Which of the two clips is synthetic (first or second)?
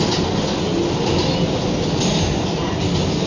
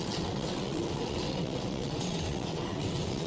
second